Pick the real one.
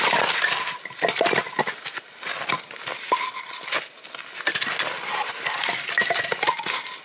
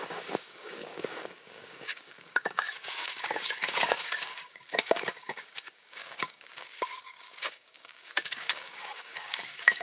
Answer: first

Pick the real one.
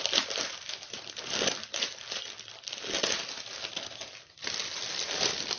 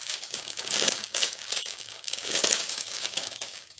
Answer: first